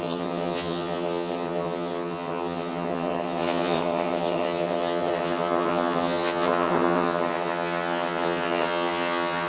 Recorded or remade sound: remade